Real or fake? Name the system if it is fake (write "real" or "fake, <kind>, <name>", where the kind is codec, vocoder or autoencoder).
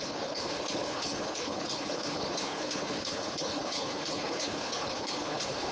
fake, codec, HILCodec